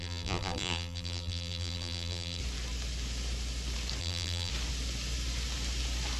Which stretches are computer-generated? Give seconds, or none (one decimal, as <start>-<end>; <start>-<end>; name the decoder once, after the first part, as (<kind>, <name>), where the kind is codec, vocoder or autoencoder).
0.0-2.4 (vocoder, BigVGAN v2); 4.0-4.5